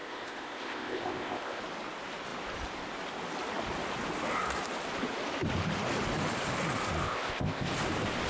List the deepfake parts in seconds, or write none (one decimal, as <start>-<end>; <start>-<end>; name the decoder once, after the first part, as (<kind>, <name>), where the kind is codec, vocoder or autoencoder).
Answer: 0.0-1.6 (codec, ZipCodec); 7.0-7.7